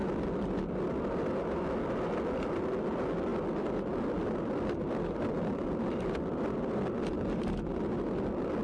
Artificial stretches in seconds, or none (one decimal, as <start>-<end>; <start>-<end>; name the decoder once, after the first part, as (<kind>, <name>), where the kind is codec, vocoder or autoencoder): 0.0-0.7 (vocoder, BigVGAN v2); 3.3-7.6